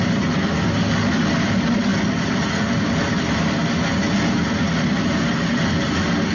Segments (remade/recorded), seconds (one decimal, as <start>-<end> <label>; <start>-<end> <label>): 0.0-6.3 recorded